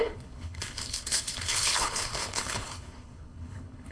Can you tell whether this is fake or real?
fake